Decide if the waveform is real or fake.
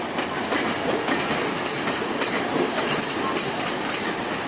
real